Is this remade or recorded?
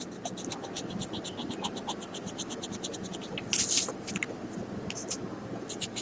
recorded